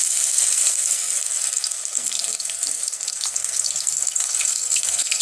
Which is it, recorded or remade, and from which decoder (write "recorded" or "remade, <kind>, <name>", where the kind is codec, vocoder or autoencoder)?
remade, codec, SNAC